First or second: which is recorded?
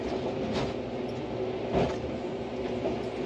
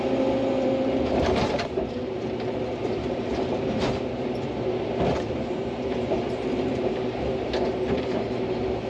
first